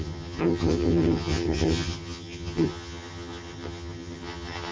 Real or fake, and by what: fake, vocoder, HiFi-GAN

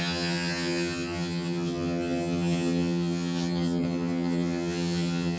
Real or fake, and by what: fake, vocoder, HiFi-GAN